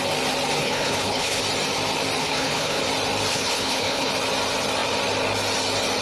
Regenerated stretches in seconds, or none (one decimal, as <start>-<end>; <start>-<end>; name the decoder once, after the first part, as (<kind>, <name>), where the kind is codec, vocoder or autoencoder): 0.6-1.4 (codec, HILCodec); 2.2-2.8; 3.3-4.1